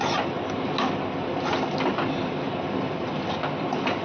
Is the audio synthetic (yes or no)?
no